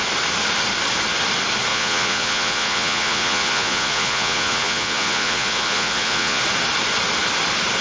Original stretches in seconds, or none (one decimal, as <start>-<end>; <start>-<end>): 0.0-1.7; 6.4-7.8